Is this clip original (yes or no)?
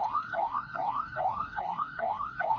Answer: no